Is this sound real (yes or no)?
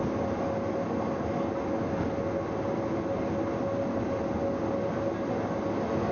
yes